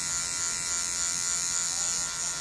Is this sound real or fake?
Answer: real